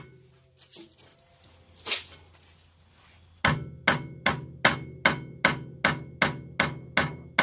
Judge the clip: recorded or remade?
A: recorded